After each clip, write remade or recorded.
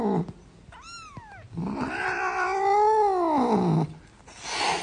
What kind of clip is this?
recorded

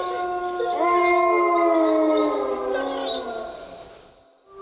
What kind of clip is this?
recorded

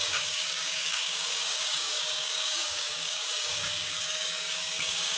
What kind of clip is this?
remade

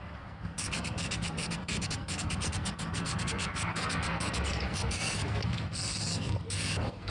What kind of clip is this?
remade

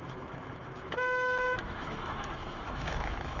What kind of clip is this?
remade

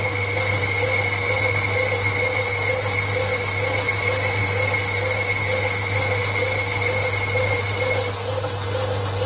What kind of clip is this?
recorded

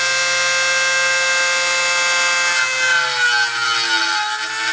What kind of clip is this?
recorded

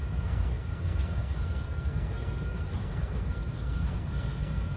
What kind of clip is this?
remade